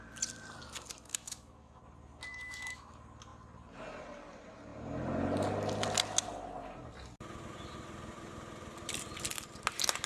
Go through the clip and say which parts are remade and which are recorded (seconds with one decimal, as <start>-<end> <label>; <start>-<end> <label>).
0.0-1.1 recorded; 1.1-1.8 remade; 1.8-2.3 recorded; 2.3-2.9 remade; 2.9-10.1 recorded